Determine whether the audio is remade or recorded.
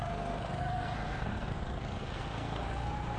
remade